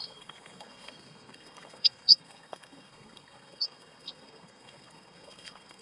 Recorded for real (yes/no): no